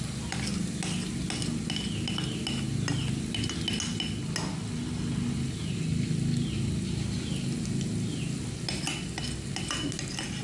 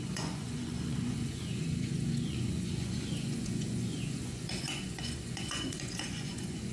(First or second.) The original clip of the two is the first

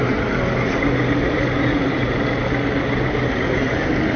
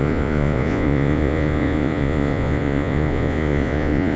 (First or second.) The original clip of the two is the first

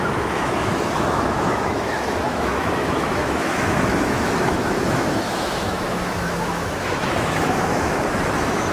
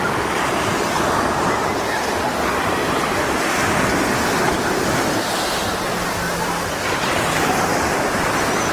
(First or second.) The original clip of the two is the second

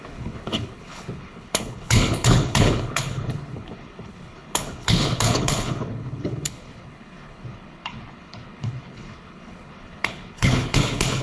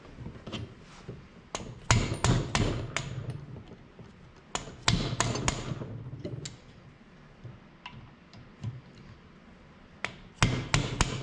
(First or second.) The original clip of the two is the second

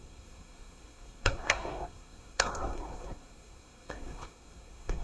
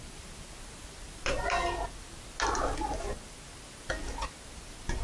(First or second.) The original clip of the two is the second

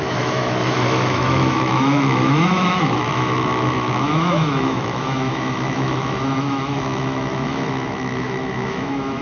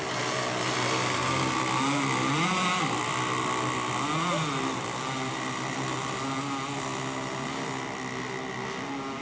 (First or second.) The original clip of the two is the second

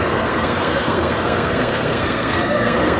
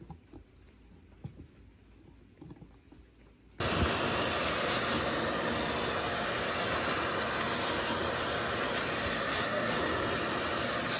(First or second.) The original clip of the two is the second